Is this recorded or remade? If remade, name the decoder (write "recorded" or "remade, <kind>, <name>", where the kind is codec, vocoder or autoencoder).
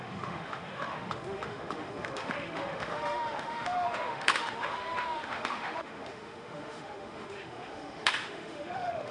remade, autoencoder, DAC-VAE